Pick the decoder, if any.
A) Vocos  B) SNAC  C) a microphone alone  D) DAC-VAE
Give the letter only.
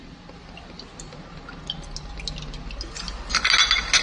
C